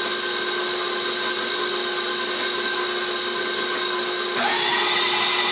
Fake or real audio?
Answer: real